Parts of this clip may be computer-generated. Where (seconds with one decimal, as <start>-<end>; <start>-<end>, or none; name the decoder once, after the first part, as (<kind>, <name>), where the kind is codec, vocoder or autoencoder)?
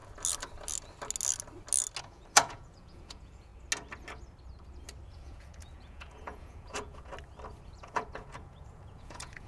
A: 2.0-3.5 (vocoder, Vocos); 5.1-7.1; 7.7-9.5